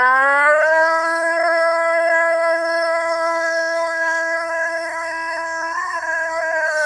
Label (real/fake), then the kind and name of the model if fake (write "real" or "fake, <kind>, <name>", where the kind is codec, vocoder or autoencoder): fake, codec, SNAC